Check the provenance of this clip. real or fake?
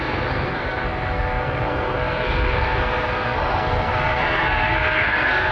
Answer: fake